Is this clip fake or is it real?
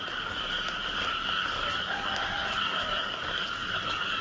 fake